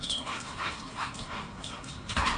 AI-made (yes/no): yes